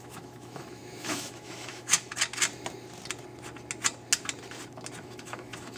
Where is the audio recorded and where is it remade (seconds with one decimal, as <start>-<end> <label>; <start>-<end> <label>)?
0.0-2.1 remade; 2.1-5.0 recorded; 5.0-5.8 remade